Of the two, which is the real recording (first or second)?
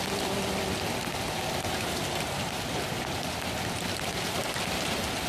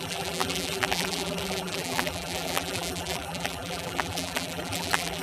first